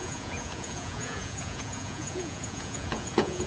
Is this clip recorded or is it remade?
remade